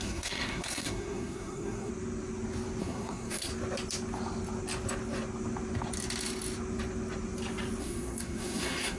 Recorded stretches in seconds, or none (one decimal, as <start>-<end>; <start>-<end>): 1.9-2.8; 3.5-7.8